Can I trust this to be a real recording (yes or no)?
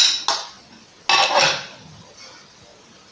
yes